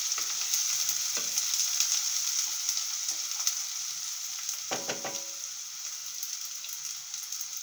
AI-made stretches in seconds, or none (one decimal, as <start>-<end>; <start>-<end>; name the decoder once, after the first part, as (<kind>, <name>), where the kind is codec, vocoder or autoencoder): none